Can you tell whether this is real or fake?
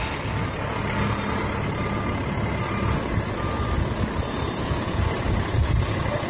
real